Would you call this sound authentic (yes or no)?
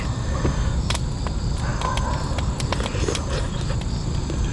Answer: yes